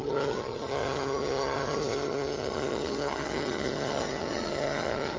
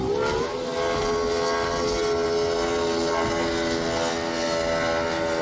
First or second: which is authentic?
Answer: second